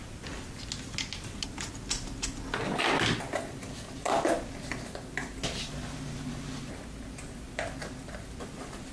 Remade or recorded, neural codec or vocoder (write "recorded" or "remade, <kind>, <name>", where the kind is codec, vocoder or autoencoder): recorded